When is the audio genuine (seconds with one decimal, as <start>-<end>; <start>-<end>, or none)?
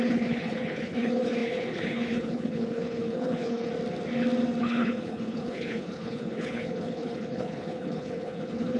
3.7-4.6